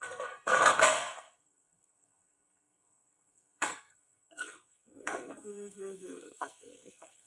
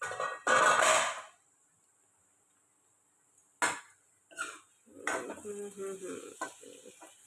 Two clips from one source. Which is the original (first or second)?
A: second